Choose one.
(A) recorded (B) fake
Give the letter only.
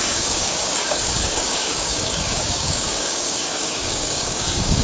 B